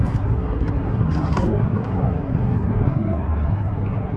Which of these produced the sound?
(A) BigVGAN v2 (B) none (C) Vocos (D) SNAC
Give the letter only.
D